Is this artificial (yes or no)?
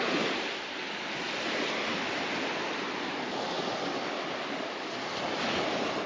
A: no